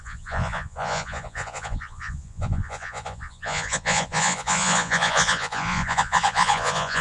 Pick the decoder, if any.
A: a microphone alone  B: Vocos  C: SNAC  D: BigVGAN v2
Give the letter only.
B